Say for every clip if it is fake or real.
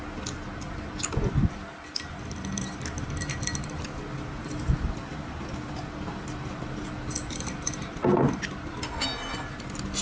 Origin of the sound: real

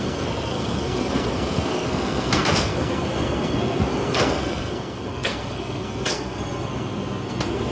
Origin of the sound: fake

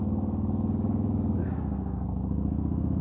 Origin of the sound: fake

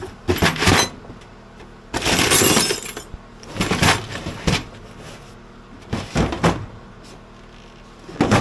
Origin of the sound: real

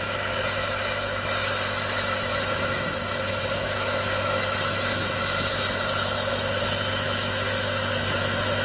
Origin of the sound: fake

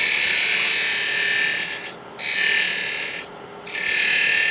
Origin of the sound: real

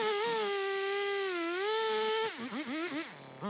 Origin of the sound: real